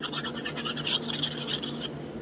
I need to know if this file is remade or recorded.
recorded